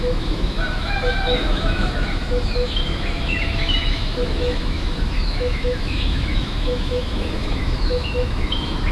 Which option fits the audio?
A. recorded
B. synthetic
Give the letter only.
B